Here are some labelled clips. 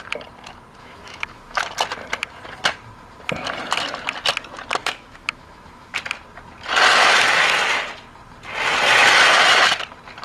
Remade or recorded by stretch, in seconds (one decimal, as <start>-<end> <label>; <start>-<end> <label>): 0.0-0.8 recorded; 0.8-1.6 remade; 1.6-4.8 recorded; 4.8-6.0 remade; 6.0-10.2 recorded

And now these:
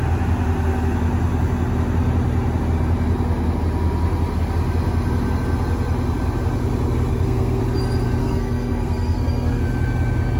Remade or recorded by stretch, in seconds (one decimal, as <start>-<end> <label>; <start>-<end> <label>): 0.0-7.1 recorded; 7.1-7.6 remade; 7.6-8.2 recorded; 8.2-9.6 remade; 9.6-10.4 recorded

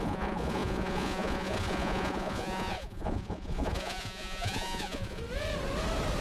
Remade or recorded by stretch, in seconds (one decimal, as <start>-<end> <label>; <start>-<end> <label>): 0.0-5.2 remade; 5.2-6.2 recorded

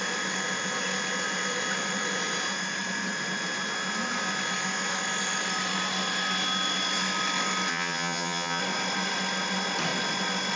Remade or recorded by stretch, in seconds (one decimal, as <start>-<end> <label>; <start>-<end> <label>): 0.0-7.7 recorded; 7.7-8.6 remade; 8.6-10.6 recorded

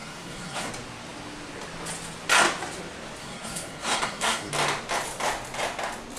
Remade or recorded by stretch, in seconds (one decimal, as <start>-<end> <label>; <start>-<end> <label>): 0.0-0.7 remade; 0.7-3.2 recorded; 3.2-4.5 remade; 4.5-6.2 recorded

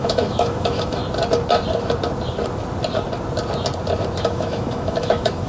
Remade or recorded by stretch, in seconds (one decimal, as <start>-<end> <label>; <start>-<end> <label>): 0.0-1.0 remade; 1.0-4.3 recorded; 4.3-5.5 remade

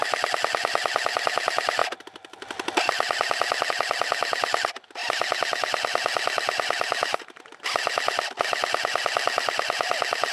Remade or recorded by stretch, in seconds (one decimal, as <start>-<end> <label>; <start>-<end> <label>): 0.0-10.3 recorded

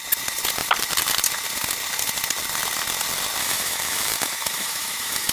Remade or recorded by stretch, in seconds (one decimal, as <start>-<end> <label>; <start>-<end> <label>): 0.0-3.4 recorded; 3.4-5.3 remade